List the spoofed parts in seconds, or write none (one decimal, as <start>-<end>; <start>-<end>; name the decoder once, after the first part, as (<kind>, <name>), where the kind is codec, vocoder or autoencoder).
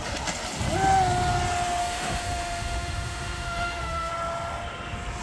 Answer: 1.8-4.1 (autoencoder, DAC-VAE)